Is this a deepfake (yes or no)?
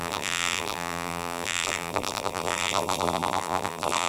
yes